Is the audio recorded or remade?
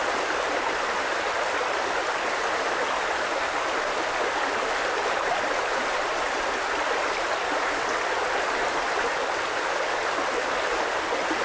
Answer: recorded